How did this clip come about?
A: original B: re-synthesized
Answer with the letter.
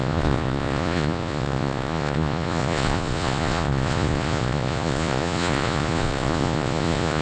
B